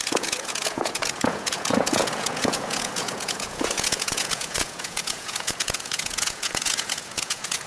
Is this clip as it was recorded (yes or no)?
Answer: no